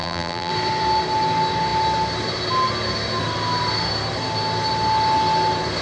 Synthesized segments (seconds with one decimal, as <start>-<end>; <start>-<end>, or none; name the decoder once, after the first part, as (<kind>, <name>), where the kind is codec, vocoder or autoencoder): 0.0-0.5 (vocoder, BigVGAN v2)